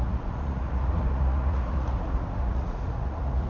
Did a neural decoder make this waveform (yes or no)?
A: yes